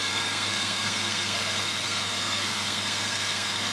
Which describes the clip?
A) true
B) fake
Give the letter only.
B